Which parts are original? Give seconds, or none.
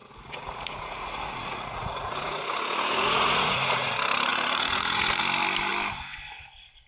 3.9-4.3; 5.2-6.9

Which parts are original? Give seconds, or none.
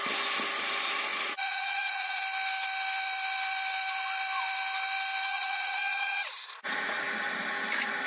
0.0-1.1; 2.2-5.3; 7.0-8.1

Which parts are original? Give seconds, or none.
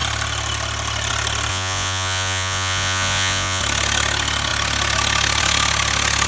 0.0-1.5; 3.6-6.3